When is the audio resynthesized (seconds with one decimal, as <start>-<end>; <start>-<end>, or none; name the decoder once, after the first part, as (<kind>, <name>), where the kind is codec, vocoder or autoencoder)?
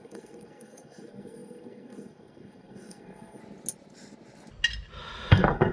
0.0-3.4 (codec, SNAC); 5.3-5.7